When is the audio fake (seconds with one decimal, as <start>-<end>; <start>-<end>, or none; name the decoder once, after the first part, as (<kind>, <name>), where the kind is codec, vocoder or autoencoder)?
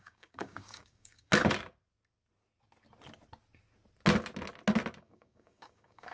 0.0-1.3 (codec, DAC); 5.0-6.1